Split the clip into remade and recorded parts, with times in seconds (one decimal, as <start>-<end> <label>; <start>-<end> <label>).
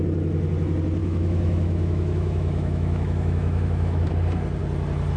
0.0-1.0 recorded; 1.0-4.1 remade; 4.1-5.2 recorded